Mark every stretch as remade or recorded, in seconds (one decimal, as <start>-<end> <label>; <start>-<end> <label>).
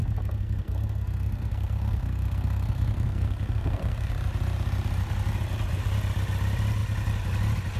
0.0-4.1 remade; 4.1-7.8 recorded